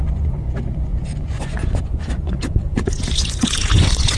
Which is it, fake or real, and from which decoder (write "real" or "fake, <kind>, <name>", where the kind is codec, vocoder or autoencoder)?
fake, vocoder, Vocos